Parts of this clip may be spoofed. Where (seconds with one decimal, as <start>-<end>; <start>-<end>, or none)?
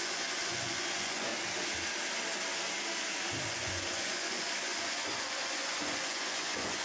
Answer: 0.0-1.3; 3.5-6.8